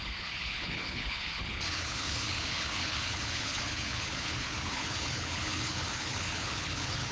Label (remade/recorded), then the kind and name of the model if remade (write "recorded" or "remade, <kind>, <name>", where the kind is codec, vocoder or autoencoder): remade, codec, HILCodec